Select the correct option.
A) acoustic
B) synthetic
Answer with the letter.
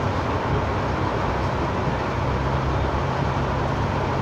A